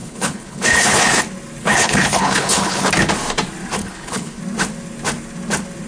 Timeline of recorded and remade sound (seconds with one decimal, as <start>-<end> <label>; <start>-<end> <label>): 0.0-1.2 remade; 1.2-1.6 recorded; 1.6-2.9 remade; 2.9-3.8 recorded; 3.8-4.4 remade; 4.4-5.9 recorded